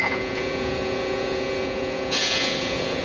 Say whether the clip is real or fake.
fake